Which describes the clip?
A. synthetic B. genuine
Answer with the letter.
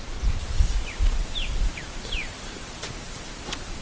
A